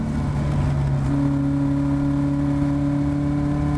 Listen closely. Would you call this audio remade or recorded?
recorded